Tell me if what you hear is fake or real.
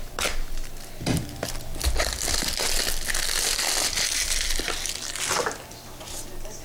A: real